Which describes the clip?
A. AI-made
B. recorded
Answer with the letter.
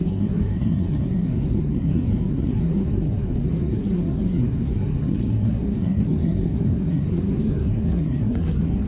A